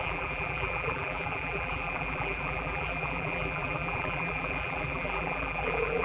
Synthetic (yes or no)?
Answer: yes